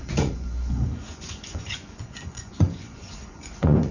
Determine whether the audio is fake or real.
fake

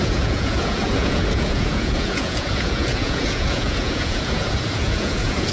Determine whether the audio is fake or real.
fake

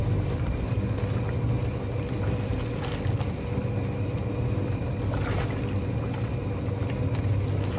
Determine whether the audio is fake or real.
real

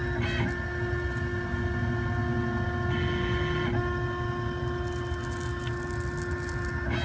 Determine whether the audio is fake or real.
real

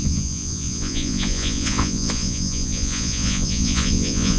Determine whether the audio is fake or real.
fake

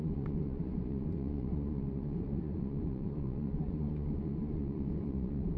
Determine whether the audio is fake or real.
fake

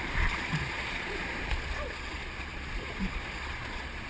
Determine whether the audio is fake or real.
fake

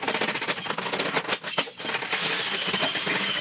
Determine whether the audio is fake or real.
real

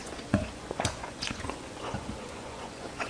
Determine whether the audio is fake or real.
fake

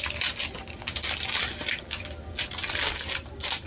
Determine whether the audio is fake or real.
real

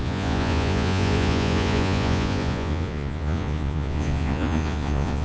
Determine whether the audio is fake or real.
fake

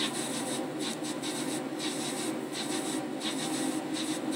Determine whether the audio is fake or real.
real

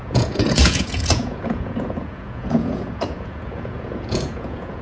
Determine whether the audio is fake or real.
fake